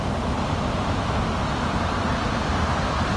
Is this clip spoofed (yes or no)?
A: no